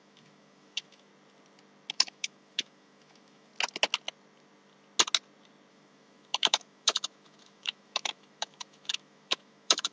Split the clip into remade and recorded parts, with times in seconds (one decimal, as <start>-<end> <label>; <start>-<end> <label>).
0.0-1.1 remade; 1.1-1.9 recorded; 1.9-3.5 remade; 3.5-5.7 recorded; 5.7-9.9 remade